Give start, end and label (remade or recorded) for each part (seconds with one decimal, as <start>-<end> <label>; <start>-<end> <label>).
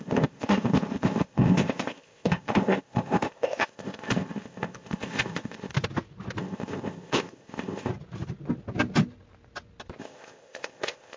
0.0-5.7 remade; 5.7-6.4 recorded; 6.4-7.9 remade; 7.9-10.0 recorded; 10.0-11.2 remade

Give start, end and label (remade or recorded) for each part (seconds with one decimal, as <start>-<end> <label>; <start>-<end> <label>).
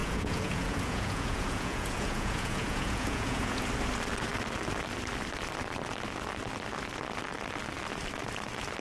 0.0-3.7 remade; 3.7-8.8 recorded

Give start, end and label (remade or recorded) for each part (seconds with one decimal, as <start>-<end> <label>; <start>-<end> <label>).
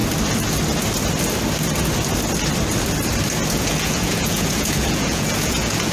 0.0-3.5 recorded; 3.5-5.9 remade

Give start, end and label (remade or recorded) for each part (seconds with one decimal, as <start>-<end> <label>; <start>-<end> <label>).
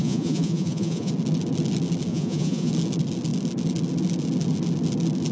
0.0-1.1 remade; 1.1-2.1 recorded; 2.1-2.7 remade; 2.7-5.3 recorded